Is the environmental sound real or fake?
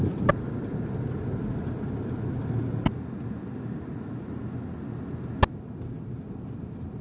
real